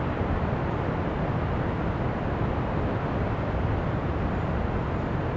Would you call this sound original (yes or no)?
yes